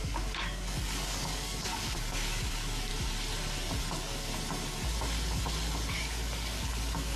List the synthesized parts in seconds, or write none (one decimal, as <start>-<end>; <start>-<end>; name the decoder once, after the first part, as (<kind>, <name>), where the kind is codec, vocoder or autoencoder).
0.0-2.9 (codec, DAC); 3.9-4.3; 5.9-7.2